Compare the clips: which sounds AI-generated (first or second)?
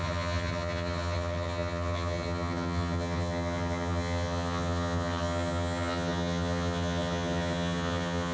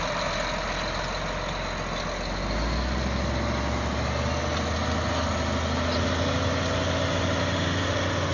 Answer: first